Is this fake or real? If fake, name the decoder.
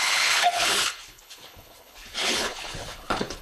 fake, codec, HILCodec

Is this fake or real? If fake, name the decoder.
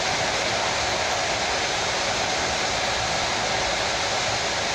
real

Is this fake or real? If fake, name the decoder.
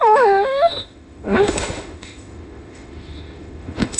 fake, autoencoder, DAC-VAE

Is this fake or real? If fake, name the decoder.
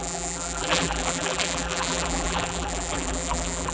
fake, vocoder, BigVGAN v2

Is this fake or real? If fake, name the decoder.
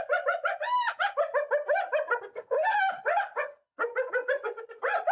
real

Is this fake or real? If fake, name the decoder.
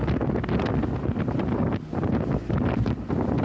real